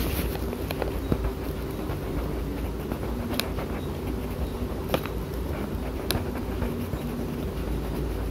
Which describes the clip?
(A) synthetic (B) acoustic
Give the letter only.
B